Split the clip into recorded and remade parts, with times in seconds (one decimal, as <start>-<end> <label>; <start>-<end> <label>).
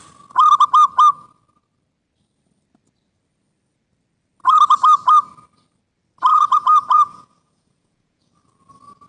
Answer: 0.0-6.3 recorded; 6.3-8.3 remade; 8.3-9.1 recorded